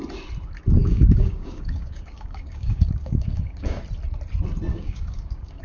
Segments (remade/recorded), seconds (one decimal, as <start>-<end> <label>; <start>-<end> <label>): 0.0-0.8 recorded; 0.8-3.8 remade; 3.8-4.7 recorded; 4.7-5.6 remade